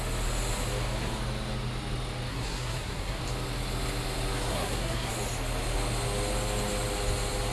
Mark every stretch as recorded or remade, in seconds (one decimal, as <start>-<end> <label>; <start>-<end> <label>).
0.0-2.3 recorded; 2.3-3.2 remade; 3.2-4.5 recorded; 4.5-5.1 remade; 5.1-7.5 recorded